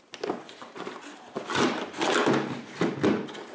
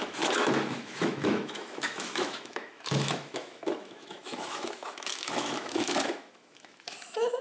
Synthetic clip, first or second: second